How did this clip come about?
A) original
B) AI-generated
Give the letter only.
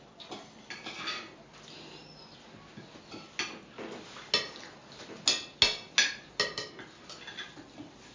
A